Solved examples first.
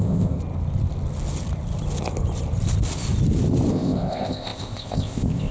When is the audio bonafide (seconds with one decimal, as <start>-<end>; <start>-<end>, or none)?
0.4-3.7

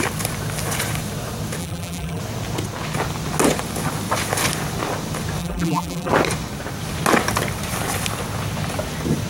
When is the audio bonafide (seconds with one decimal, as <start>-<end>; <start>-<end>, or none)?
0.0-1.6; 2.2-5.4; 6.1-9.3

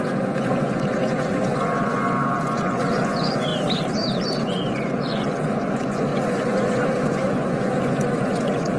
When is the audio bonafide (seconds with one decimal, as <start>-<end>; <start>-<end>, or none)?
3.5-4.4